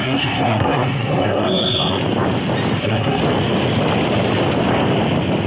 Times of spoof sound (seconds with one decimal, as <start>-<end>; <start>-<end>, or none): 0.0-2.0; 2.8-3.2